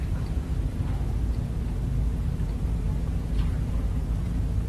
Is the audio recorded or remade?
remade